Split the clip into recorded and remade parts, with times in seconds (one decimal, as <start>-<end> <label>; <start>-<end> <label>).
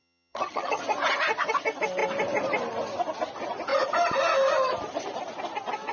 0.0-0.8 remade; 0.8-5.9 recorded